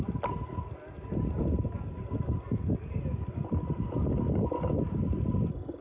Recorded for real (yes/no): yes